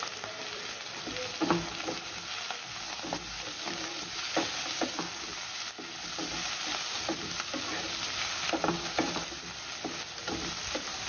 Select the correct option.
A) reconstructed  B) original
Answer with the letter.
B